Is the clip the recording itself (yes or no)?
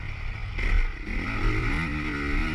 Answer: yes